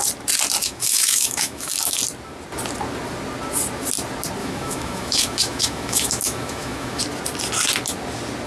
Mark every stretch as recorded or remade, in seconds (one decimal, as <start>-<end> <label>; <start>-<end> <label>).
0.0-0.6 recorded; 0.6-2.0 remade; 2.0-4.4 recorded; 4.4-7.0 remade; 7.0-8.5 recorded